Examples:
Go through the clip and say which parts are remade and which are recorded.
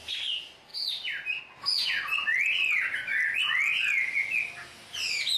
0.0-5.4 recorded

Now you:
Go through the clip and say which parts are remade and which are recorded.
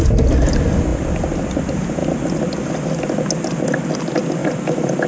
0.0-4.4 recorded; 4.4-5.1 remade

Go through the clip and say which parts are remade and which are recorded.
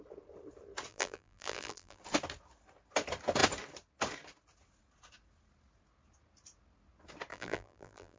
0.0-0.9 recorded; 0.9-2.0 remade; 2.0-7.3 recorded; 7.3-8.2 remade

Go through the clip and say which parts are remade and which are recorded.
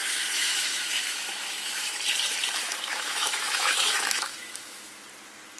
0.0-1.9 remade; 1.9-2.6 recorded; 2.6-4.9 remade; 4.9-5.6 recorded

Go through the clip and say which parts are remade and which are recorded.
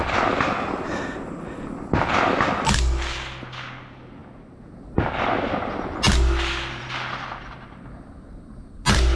0.0-9.2 recorded